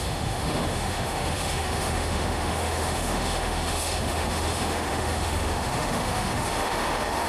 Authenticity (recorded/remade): remade